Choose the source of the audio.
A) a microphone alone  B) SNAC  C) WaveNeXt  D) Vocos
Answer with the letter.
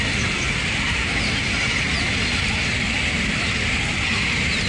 A